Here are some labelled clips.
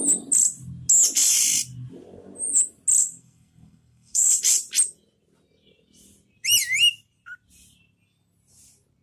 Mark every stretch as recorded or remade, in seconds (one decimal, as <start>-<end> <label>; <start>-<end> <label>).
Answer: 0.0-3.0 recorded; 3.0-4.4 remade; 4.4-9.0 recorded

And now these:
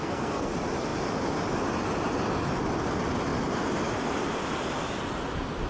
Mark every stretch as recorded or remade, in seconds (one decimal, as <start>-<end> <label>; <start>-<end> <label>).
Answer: 0.0-0.5 remade; 0.5-5.7 recorded

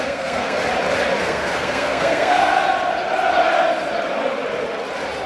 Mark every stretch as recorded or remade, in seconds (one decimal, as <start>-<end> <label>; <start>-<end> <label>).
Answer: 0.0-0.6 remade; 0.6-1.2 recorded; 1.2-2.5 remade; 2.5-5.3 recorded

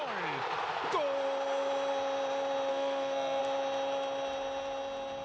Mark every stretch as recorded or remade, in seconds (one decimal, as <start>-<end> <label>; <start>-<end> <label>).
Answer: 0.0-2.7 recorded; 2.7-3.4 remade; 3.4-5.2 recorded

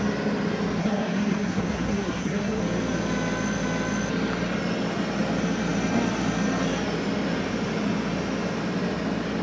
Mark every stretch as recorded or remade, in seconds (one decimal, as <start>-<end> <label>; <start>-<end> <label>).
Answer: 0.0-0.8 recorded; 0.8-2.6 remade; 2.6-9.4 recorded

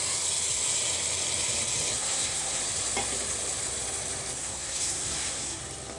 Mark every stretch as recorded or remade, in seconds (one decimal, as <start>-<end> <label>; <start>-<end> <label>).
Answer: 0.0-2.0 recorded; 2.0-2.6 remade; 2.6-4.4 recorded; 4.4-5.6 remade; 5.6-6.0 recorded